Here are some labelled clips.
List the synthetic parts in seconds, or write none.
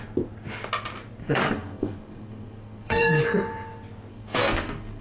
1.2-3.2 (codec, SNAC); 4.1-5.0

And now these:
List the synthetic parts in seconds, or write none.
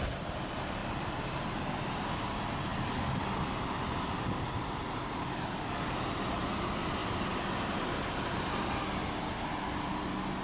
none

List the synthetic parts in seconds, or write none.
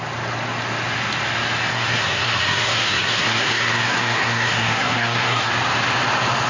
1.7-5.5 (codec, SNAC)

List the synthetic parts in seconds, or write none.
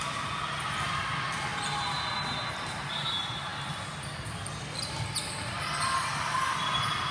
none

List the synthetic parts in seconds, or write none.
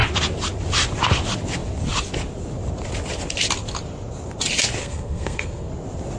4.8-5.7 (codec, SNAC)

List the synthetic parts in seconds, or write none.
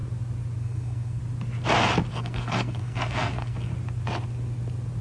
0.6-1.2 (codec, SNAC); 2.1-3.7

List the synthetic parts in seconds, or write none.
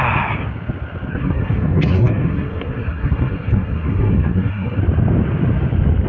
1.1-4.8 (codec, SNAC)